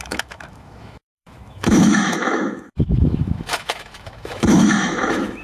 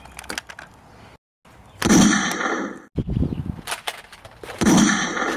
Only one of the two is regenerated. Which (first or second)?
first